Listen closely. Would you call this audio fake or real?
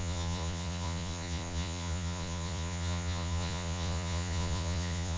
fake